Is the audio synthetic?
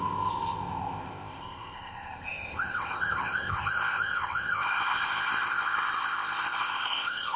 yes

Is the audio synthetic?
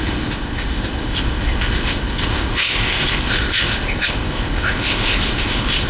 yes